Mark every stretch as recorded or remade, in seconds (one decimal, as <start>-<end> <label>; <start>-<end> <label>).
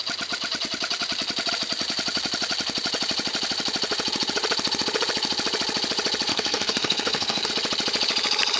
0.0-6.3 recorded; 6.3-7.5 remade; 7.5-8.6 recorded